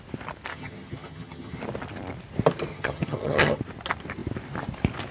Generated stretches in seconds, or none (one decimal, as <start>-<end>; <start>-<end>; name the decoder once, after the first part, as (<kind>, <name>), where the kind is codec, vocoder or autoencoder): 0.5-1.6 (vocoder, HiFi-GAN); 2.7-3.6